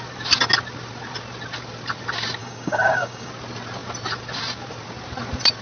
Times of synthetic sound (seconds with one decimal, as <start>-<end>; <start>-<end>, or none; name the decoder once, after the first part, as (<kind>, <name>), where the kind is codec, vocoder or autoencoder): 2.4-3.3 (codec, DAC)